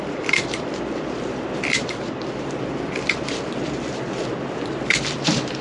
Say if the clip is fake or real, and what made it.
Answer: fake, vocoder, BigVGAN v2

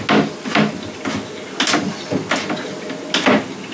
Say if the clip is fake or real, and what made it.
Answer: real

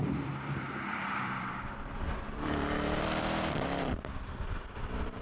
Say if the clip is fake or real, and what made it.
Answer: fake, vocoder, BigVGAN v2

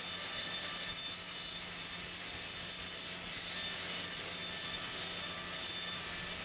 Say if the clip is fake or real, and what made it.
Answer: real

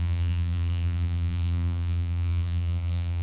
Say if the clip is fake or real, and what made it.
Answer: fake, vocoder, BigVGAN v2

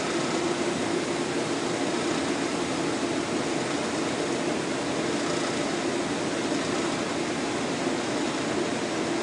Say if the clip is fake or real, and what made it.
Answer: real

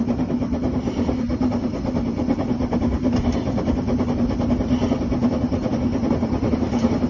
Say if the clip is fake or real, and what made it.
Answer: real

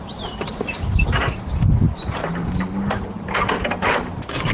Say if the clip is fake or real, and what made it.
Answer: fake, vocoder, BigVGAN v2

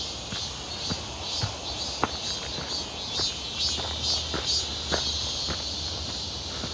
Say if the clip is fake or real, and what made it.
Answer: real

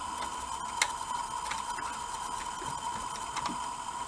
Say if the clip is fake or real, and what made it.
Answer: real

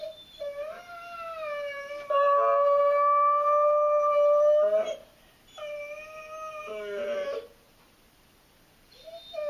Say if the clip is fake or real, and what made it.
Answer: real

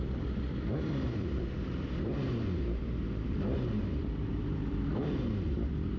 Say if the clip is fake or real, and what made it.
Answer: fake, vocoder, BigVGAN v2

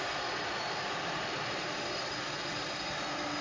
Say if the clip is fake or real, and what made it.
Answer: fake, vocoder, BigVGAN v2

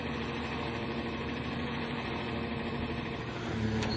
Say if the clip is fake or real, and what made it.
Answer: fake, vocoder, BigVGAN v2